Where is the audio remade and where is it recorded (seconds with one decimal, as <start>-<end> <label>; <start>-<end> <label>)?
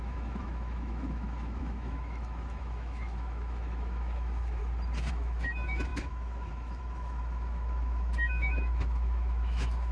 0.0-4.6 remade; 4.6-5.1 recorded; 5.1-9.9 remade